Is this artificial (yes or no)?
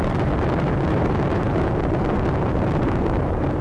yes